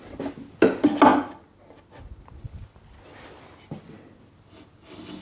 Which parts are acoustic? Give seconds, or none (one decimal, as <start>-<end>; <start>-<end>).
0.0-5.2